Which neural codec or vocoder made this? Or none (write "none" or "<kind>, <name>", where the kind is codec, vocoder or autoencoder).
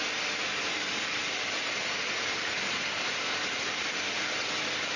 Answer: vocoder, BigVGAN v2